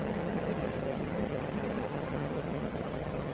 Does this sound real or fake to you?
fake